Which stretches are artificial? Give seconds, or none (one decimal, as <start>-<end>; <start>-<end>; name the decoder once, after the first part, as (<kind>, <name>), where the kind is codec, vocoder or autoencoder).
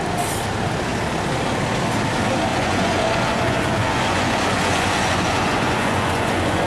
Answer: 2.5-6.7 (vocoder, Vocos)